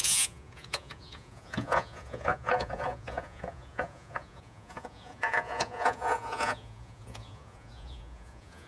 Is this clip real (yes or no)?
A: no